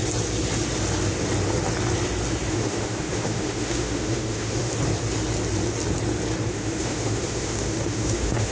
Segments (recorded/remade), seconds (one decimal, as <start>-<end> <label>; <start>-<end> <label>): 0.0-2.5 recorded; 2.5-4.7 remade; 4.7-6.5 recorded; 6.5-8.5 remade